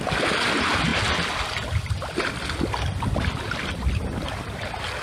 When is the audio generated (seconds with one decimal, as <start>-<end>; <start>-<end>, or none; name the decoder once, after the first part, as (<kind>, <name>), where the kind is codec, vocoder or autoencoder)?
none